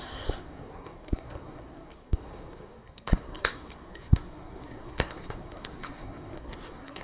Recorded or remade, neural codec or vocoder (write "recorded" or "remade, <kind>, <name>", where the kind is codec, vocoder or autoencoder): remade, codec, SNAC